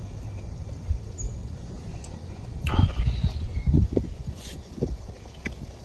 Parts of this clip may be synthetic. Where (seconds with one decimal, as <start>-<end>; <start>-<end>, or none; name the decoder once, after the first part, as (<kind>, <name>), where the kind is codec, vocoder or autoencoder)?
1.4-4.8 (vocoder, Vocos)